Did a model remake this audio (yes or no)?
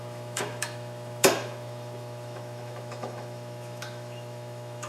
yes